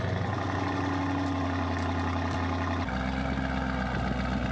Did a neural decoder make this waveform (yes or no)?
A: no